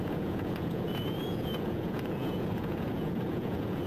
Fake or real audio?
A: fake